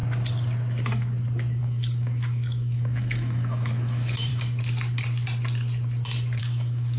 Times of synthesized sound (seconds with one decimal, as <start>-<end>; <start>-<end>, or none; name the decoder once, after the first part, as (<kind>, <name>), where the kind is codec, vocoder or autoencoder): 1.6-4.3 (autoencoder, DAC-VAE); 6.4-7.0